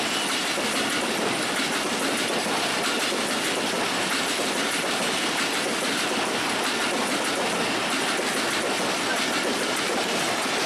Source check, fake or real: real